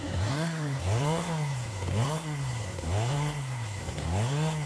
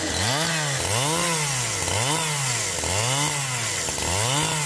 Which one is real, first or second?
second